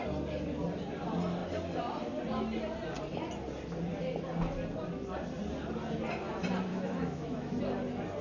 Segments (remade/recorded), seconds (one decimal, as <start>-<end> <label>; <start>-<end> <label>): 0.0-6.7 recorded; 6.7-7.6 remade; 7.6-8.2 recorded